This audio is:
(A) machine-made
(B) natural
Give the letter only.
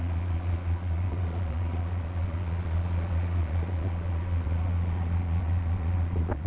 A